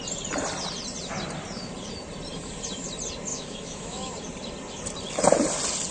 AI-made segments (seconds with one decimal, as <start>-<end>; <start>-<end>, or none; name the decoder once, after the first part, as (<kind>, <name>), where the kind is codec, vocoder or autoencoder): 3.3-4.1 (autoencoder, DAC-VAE)